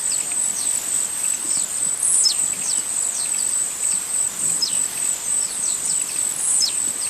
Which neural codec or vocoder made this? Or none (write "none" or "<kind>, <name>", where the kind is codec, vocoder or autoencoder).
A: none